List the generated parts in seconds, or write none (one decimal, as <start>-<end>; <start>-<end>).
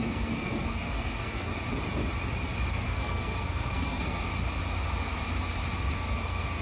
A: 0.0-1.5; 2.7-4.3; 5.9-6.6